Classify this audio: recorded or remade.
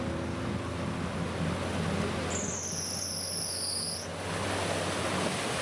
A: recorded